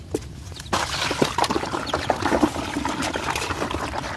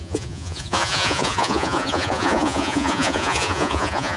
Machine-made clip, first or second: second